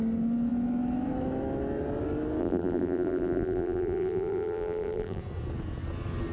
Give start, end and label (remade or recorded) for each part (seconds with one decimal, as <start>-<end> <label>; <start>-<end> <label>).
0.0-2.4 recorded; 2.4-5.2 remade; 5.2-6.3 recorded